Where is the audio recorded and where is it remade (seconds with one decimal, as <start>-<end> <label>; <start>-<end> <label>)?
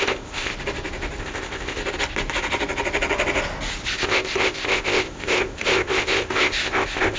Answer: 0.0-0.5 remade; 0.5-1.2 recorded; 1.2-1.8 remade; 1.8-3.9 recorded; 3.9-7.2 remade